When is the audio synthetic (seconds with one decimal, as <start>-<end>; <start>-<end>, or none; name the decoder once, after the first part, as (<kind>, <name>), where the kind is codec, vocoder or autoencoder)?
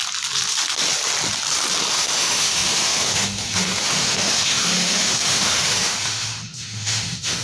1.9-7.4 (autoencoder, DAC-VAE)